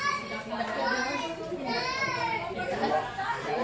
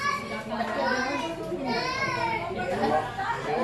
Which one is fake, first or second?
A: first